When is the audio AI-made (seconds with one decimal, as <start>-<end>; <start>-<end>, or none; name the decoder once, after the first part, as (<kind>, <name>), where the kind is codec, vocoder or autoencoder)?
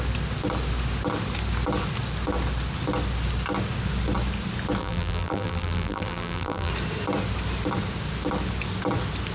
4.8-6.7 (vocoder, BigVGAN v2)